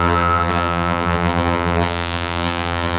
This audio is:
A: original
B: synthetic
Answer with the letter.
B